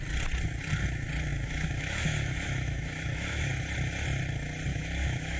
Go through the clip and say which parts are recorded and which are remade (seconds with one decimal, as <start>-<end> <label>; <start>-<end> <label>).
0.0-1.3 recorded; 1.3-3.5 remade; 3.5-4.7 recorded; 4.7-5.4 remade

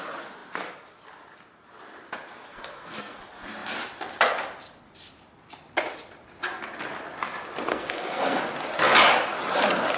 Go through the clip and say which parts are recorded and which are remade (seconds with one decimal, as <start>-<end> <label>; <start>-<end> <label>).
0.0-2.5 recorded; 2.5-3.2 remade; 3.2-7.7 recorded; 7.7-8.4 remade; 8.4-10.0 recorded

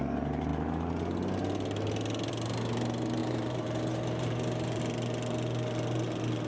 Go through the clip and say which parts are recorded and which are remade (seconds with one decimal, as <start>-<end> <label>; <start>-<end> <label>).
0.0-3.2 recorded; 3.2-4.8 remade; 4.8-6.5 recorded

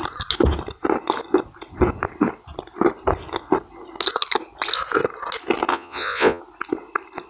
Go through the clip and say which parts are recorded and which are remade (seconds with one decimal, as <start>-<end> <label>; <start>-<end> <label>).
0.0-5.7 recorded; 5.7-6.4 remade; 6.4-7.3 recorded

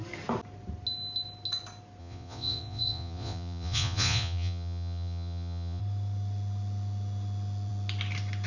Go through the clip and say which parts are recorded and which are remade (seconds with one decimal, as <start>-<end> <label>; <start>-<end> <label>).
0.0-2.0 recorded; 2.0-5.8 remade; 5.8-8.5 recorded

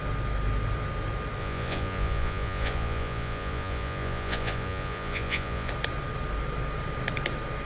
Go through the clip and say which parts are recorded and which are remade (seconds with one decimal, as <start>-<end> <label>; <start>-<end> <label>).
0.0-1.4 recorded; 1.4-5.7 remade; 5.7-7.6 recorded